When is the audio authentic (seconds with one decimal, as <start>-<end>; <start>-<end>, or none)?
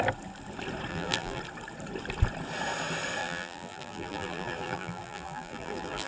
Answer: 0.0-0.9; 1.4-3.2